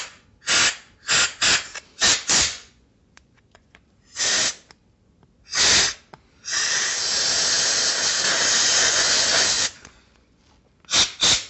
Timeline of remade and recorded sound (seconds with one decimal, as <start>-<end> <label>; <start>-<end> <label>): 0.0-2.1 recorded; 2.1-3.8 remade; 3.8-8.6 recorded; 8.6-10.4 remade; 10.4-11.5 recorded